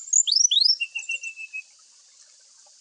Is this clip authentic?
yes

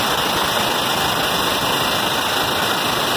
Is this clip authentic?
yes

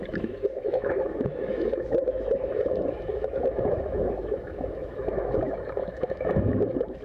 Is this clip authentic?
no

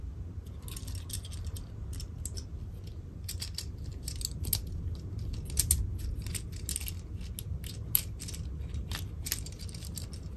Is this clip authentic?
yes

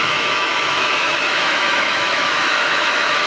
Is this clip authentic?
no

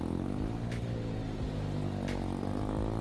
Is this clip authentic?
yes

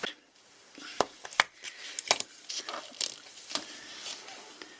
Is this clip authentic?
yes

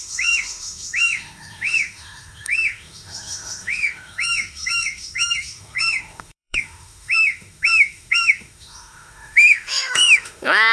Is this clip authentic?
no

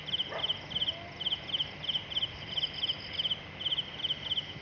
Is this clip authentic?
yes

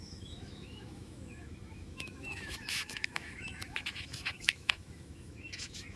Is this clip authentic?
no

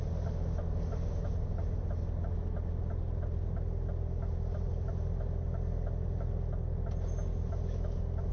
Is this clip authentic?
yes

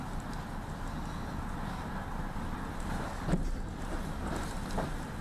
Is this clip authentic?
yes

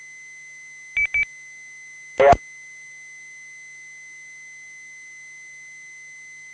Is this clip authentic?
yes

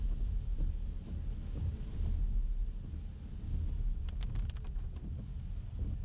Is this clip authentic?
yes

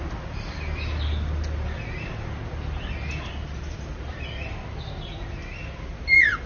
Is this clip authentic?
yes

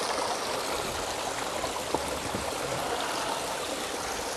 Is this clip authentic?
yes